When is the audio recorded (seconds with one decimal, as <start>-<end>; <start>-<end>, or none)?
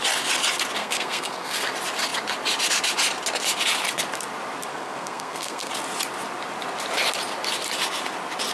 0.0-0.8; 1.7-4.7; 5.7-8.5